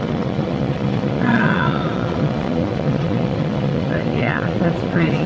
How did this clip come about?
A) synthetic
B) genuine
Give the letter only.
A